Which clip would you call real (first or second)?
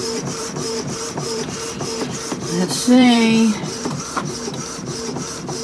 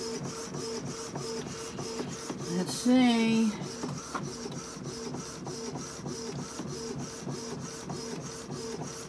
second